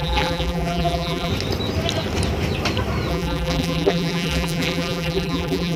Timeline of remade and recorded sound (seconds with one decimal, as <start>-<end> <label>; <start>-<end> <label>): 0.0-1.3 remade; 1.3-3.1 recorded; 3.1-5.8 remade